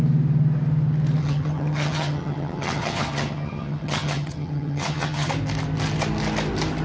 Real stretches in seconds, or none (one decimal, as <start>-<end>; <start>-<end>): 0.0-1.2; 5.3-6.8